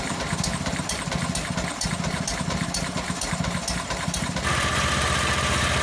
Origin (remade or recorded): remade